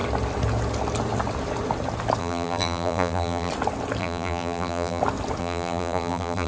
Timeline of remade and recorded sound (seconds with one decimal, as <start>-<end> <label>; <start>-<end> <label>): 0.0-2.2 recorded; 2.2-3.5 remade; 3.5-4.0 recorded; 4.0-5.0 remade; 5.0-5.4 recorded; 5.4-6.5 remade